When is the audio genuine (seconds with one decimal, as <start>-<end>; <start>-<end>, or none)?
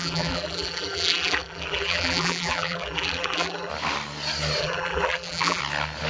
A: 3.7-4.6; 5.6-6.1